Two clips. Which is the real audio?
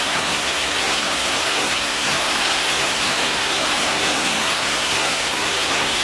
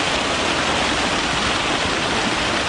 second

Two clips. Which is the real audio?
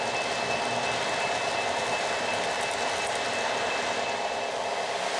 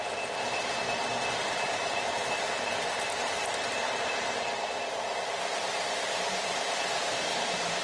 first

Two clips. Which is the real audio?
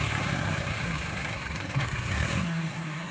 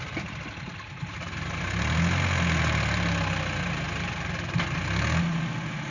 second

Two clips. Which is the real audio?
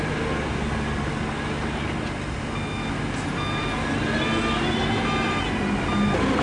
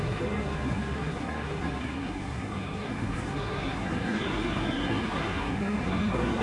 first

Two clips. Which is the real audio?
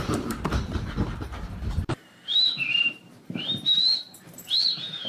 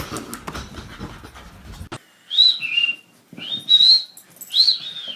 second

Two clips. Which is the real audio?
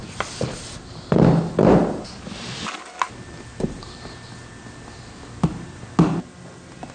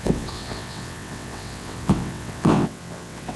first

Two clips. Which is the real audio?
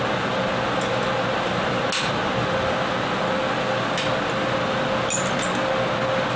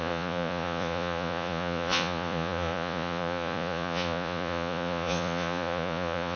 first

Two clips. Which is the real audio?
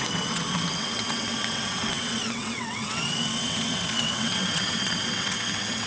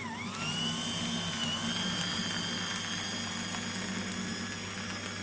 second